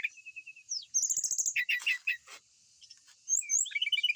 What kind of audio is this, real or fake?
real